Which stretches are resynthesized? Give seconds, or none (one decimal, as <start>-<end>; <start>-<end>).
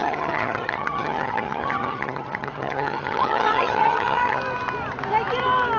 0.0-4.4